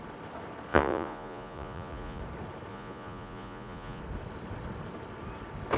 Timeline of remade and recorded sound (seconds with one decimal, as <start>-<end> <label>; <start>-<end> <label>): 0.0-0.7 recorded; 0.7-2.2 remade; 2.2-2.7 recorded; 2.7-4.0 remade; 4.0-5.8 recorded